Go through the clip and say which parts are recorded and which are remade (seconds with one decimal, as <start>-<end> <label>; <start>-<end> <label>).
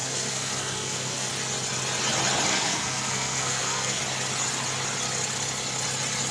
0.0-1.3 remade; 1.3-2.5 recorded; 2.5-4.0 remade; 4.0-6.3 recorded